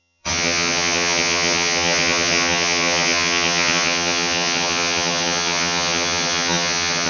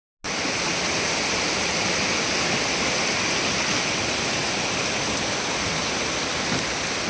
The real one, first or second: second